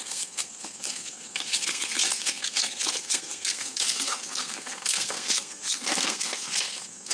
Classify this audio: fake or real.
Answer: fake